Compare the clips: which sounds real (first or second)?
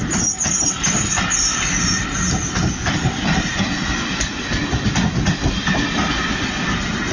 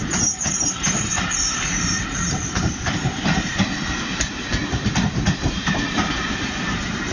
first